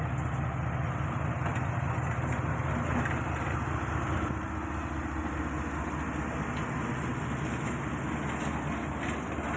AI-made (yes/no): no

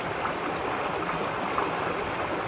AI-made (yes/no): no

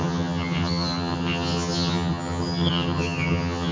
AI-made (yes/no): yes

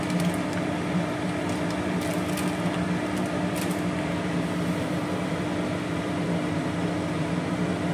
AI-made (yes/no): no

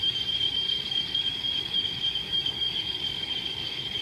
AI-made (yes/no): yes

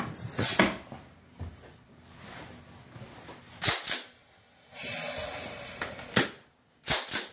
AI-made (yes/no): no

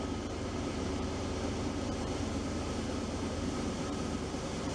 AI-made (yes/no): yes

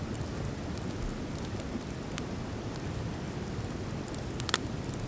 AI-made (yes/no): no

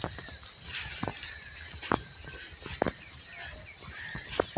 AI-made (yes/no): yes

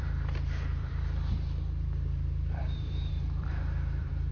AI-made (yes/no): yes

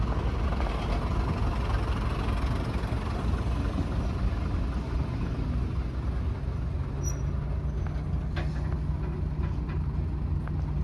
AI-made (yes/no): no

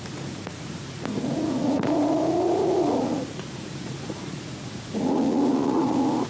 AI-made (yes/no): yes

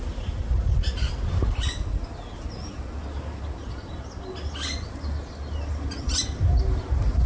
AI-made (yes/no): no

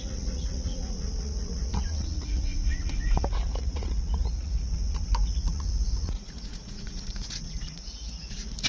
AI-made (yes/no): yes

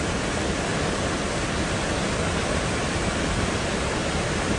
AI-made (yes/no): no